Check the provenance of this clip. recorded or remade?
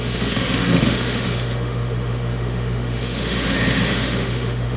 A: remade